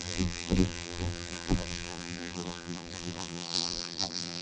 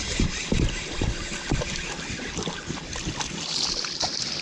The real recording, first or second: second